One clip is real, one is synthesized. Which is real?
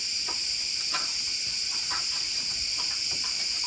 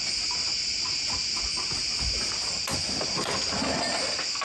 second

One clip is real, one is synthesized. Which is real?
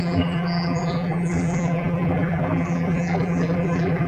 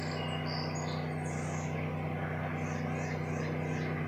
second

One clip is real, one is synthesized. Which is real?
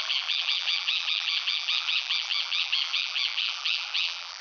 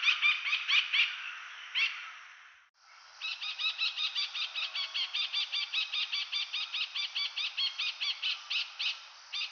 second